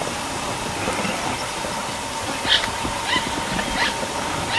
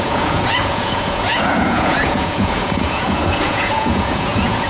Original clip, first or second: first